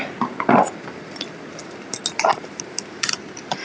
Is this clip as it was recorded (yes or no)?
yes